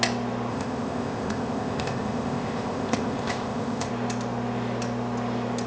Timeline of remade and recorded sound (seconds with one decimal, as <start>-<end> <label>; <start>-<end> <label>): 0.0-0.5 recorded; 0.5-3.9 remade; 3.9-5.7 recorded